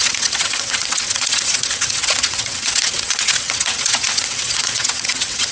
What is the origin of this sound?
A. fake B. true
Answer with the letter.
A